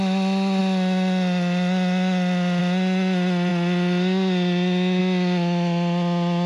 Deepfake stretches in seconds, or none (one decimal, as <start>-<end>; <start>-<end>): none